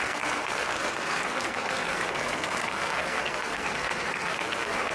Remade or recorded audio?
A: remade